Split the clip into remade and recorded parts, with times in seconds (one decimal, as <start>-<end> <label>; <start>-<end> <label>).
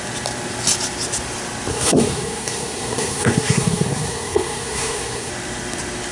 0.0-1.7 recorded; 1.7-5.3 remade; 5.3-6.1 recorded